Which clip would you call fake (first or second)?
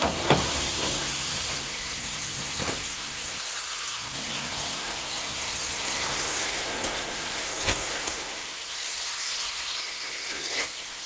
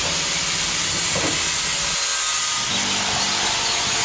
first